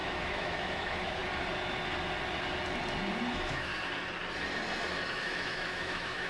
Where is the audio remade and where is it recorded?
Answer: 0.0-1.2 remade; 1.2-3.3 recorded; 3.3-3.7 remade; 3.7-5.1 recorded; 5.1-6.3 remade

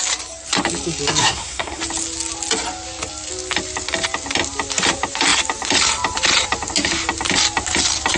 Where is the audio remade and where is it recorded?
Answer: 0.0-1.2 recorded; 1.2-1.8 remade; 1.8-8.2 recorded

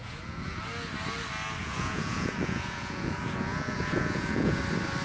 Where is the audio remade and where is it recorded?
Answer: 0.0-0.6 remade; 0.6-1.6 recorded; 1.6-4.6 remade; 4.6-5.0 recorded

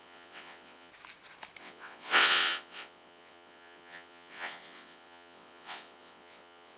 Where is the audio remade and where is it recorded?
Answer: 0.0-0.9 remade; 0.9-1.6 recorded; 1.6-6.8 remade

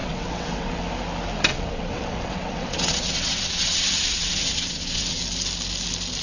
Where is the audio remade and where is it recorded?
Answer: 0.0-0.8 remade; 0.8-1.5 recorded; 1.5-5.2 remade; 5.2-6.2 recorded

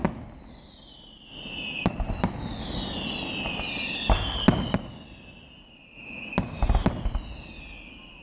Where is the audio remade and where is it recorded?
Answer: 0.0-8.2 recorded